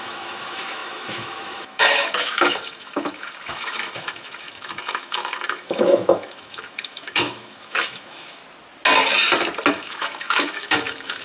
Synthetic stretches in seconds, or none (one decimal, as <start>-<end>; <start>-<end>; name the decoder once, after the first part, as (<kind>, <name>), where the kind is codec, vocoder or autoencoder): 0.0-8.4 (autoencoder, DAC-VAE); 9.7-11.2